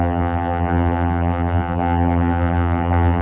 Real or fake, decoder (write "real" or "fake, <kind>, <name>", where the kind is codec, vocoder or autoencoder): fake, vocoder, BigVGAN v2